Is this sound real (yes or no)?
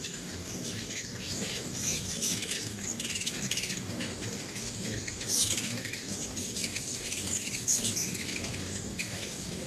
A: no